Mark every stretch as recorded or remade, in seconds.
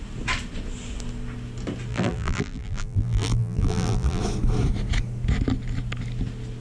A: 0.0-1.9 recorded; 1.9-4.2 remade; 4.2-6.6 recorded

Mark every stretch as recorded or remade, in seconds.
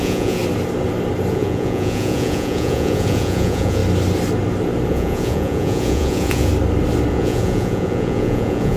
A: 0.0-0.4 remade; 0.4-1.3 recorded; 1.3-3.8 remade; 3.8-4.9 recorded; 4.9-6.5 remade; 6.5-7.1 recorded; 7.1-8.8 remade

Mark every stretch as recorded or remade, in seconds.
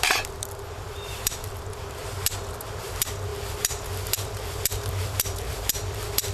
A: 0.0-2.0 remade; 2.0-2.8 recorded; 2.8-6.3 remade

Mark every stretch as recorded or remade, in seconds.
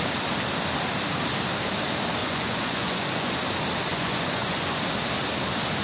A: 0.0-2.2 recorded; 2.2-3.3 remade; 3.3-3.9 recorded; 3.9-4.8 remade; 4.8-5.8 recorded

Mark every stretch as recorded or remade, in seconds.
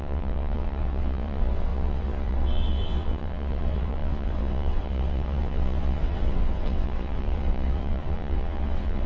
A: 0.0-9.1 remade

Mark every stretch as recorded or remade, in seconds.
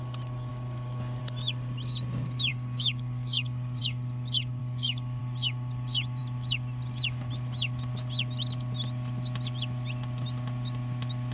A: 0.0-0.5 recorded; 0.5-1.2 remade; 1.2-2.5 recorded; 2.5-3.8 remade; 3.8-4.6 recorded; 4.6-5.2 remade; 5.2-11.3 recorded